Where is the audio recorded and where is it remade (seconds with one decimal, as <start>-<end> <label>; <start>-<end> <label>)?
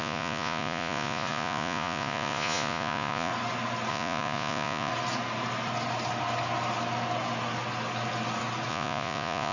0.0-3.3 remade; 3.3-3.9 recorded; 3.9-4.9 remade; 4.9-8.7 recorded; 8.7-9.5 remade